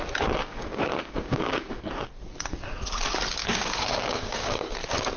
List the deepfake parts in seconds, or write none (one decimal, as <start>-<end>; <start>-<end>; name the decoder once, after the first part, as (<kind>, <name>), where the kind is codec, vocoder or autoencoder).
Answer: 0.5-1.8 (codec, DAC); 3.4-4.7